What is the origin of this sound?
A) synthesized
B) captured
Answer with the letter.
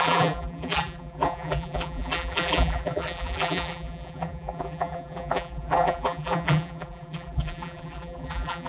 A